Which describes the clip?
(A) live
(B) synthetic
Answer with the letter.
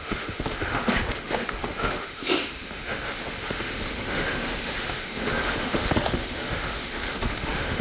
B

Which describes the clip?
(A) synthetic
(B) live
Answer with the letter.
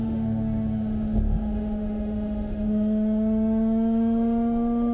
A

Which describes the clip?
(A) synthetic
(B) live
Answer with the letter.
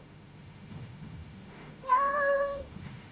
A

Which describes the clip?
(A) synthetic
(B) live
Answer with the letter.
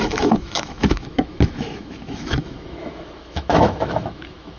A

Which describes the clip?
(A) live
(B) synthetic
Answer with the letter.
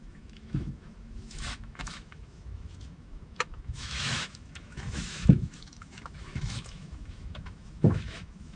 B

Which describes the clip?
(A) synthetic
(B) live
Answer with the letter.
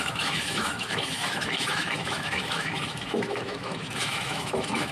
A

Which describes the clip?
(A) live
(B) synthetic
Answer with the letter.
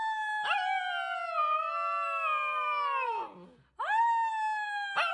A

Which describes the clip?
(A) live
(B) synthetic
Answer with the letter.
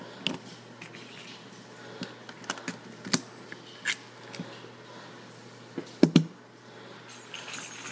A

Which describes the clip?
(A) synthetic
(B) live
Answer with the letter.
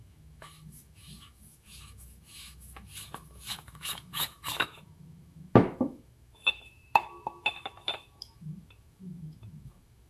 A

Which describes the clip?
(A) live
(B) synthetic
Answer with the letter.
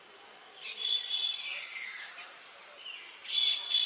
A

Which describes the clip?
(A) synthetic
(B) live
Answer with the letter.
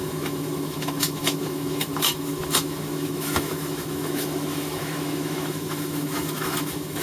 A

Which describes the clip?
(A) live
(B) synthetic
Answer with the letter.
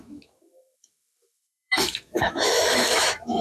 B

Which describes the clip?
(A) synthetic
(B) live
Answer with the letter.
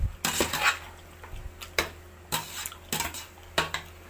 B